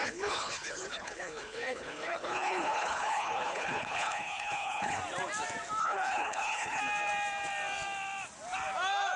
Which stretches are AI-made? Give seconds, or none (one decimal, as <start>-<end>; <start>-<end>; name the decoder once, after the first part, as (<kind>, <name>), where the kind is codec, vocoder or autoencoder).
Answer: 0.0-5.0 (codec, HILCodec); 5.8-6.8